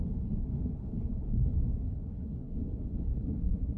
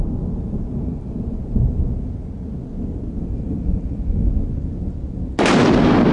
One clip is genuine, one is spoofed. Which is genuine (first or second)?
second